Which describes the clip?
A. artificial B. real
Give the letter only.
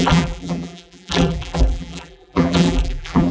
A